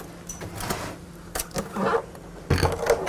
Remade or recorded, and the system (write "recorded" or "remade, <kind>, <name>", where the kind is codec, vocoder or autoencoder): recorded